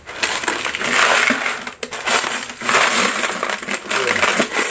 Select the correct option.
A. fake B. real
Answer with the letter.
B